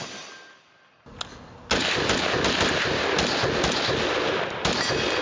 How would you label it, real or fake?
real